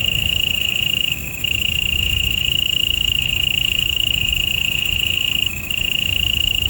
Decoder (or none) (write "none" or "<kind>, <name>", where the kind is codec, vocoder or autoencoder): autoencoder, DAC-VAE